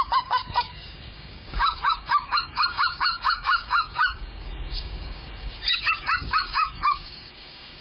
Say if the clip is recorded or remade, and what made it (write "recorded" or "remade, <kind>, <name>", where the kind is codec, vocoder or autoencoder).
remade, codec, DAC